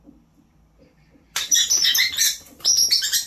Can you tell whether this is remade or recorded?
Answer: recorded